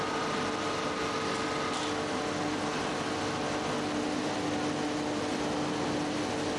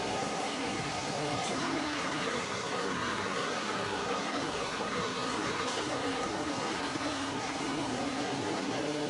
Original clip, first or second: first